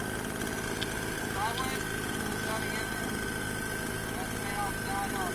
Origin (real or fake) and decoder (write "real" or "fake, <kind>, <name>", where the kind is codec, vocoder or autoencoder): real